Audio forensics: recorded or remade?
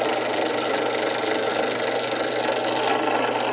recorded